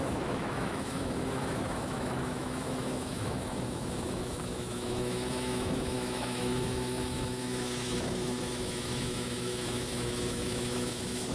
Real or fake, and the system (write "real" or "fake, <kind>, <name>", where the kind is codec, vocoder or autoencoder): fake, autoencoder, DAC-VAE